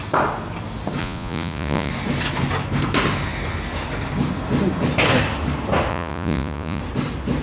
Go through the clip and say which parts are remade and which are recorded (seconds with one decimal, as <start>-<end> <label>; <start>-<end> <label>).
0.0-1.0 recorded; 1.0-1.9 remade; 1.9-5.9 recorded; 5.9-6.8 remade; 6.8-7.4 recorded